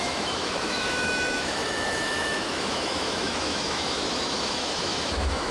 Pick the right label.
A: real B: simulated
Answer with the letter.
B